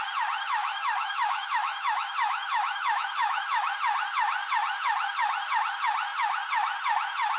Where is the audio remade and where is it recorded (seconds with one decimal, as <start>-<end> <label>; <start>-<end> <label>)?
0.0-0.6 recorded; 0.6-3.7 remade; 3.7-7.4 recorded